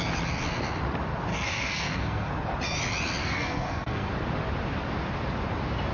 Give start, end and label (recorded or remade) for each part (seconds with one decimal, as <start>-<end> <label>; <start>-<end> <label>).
0.0-1.3 recorded; 1.3-2.3 remade; 2.3-3.2 recorded; 3.2-4.1 remade; 4.1-5.9 recorded